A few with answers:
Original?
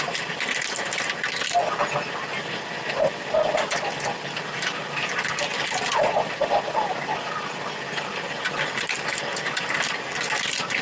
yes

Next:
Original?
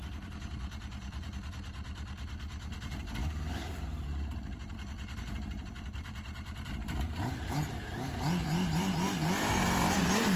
no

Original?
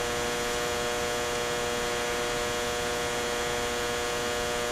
yes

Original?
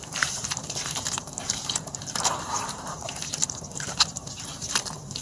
no